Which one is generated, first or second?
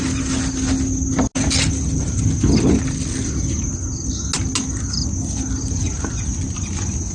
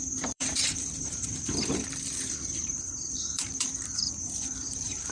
second